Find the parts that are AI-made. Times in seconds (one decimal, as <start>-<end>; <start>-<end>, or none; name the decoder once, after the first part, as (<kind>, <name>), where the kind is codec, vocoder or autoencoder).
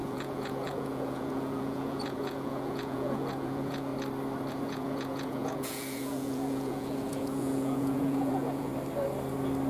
0.0-3.9 (vocoder, Vocos); 4.5-8.7